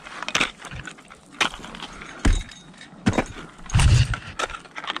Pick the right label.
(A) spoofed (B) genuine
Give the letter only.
B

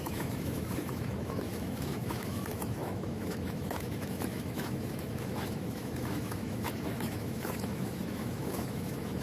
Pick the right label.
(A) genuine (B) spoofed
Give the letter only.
B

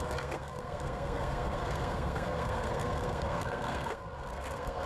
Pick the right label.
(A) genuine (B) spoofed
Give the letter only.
B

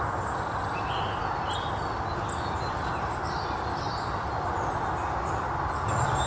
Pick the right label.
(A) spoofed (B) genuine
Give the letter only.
B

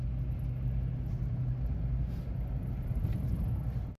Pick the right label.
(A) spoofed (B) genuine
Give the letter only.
B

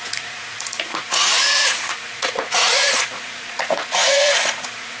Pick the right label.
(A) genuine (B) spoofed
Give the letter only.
B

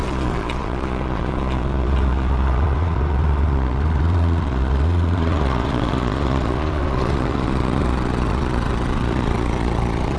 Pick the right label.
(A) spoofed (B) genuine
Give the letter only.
A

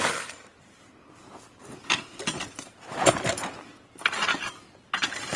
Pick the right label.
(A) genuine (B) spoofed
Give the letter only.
A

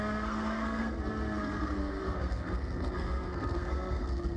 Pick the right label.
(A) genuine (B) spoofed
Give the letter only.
B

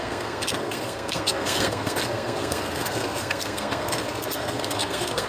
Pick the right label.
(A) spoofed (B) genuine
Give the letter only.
A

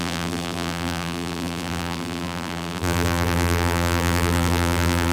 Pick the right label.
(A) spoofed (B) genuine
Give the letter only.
A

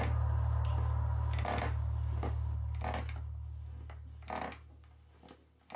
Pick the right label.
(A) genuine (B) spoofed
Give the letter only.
A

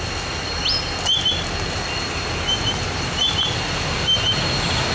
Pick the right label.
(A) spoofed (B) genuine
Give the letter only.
B